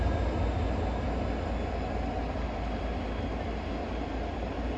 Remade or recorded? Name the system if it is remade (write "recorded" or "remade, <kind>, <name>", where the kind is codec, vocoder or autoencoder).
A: recorded